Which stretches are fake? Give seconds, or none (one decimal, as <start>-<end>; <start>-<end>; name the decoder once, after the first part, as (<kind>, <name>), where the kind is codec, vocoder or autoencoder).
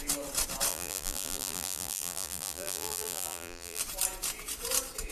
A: 0.7-3.8 (vocoder, BigVGAN v2)